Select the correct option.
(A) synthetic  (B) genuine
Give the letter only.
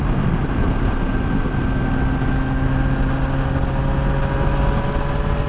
B